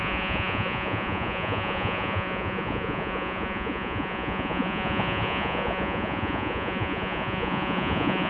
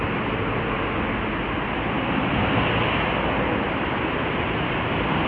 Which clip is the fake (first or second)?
first